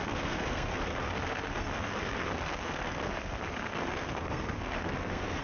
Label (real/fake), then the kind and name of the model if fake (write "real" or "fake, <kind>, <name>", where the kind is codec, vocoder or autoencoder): fake, codec, SNAC